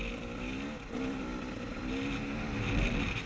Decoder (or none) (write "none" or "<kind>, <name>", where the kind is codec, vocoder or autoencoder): none